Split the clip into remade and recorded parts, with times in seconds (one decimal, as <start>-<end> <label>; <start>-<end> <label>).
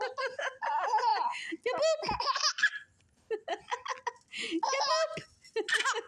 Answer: 0.0-6.1 recorded